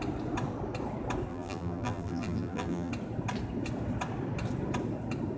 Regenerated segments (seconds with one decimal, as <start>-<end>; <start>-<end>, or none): 1.3-2.9